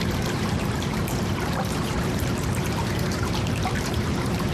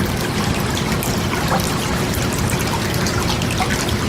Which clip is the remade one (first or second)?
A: first